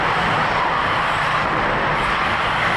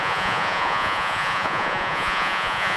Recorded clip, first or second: first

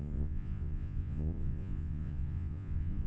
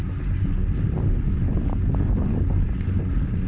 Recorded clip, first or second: second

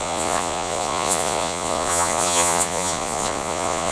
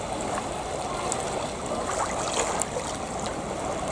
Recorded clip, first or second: second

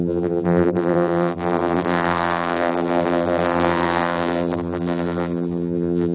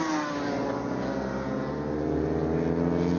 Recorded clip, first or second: second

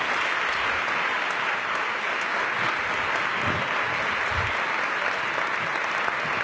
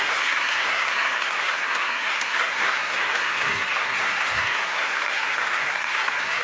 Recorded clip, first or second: first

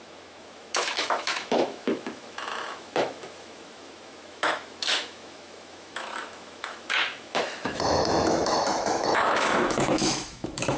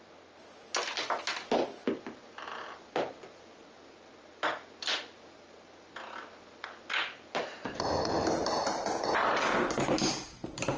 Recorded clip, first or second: second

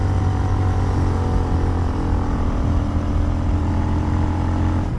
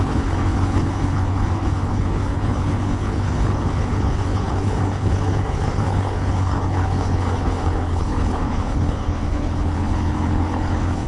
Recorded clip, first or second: first